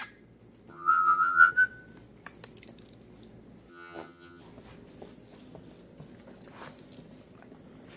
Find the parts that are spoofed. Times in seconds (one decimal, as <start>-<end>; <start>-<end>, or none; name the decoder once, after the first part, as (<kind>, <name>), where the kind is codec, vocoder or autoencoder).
0.7-1.5 (vocoder, HiFi-GAN); 3.7-4.4